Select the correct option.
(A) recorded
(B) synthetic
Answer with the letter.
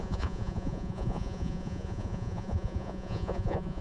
B